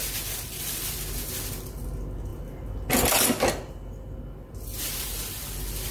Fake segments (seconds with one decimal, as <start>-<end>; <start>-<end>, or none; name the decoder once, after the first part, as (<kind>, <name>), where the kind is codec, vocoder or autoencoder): none